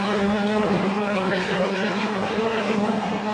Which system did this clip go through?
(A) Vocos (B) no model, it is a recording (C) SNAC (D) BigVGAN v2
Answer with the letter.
C